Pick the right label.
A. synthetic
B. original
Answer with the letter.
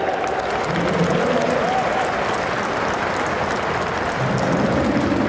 B